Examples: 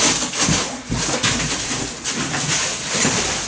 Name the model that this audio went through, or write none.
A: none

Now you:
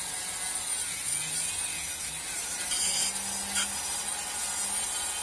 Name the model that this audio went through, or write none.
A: none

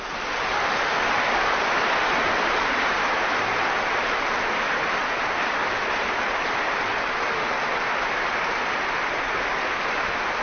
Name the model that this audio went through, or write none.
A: none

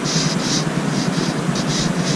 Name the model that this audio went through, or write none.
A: none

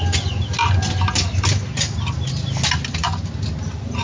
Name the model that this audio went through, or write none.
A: none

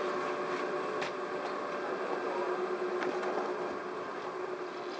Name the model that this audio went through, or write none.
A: none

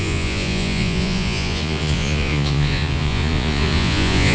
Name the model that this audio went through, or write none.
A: vocoder, Vocos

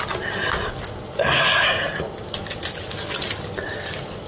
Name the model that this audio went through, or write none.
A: none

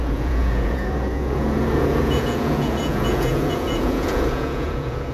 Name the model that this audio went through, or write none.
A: vocoder, Vocos